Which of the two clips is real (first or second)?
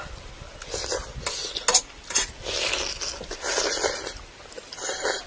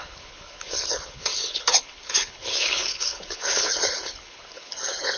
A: first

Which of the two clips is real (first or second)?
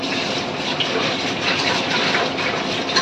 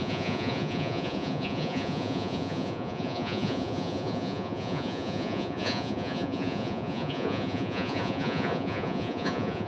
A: first